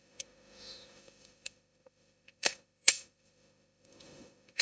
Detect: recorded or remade remade